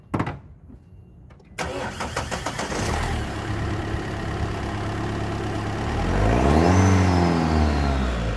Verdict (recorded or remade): recorded